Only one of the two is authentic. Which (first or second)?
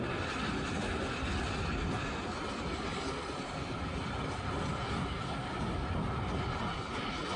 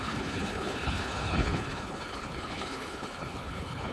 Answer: first